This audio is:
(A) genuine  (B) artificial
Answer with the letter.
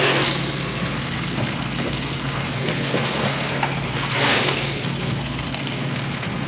B